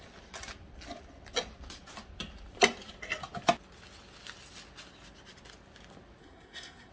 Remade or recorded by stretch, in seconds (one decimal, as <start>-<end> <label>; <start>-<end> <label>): 0.0-6.2 recorded; 6.2-6.9 remade